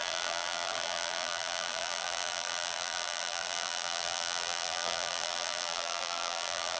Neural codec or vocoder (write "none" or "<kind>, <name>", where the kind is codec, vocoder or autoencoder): vocoder, BigVGAN v2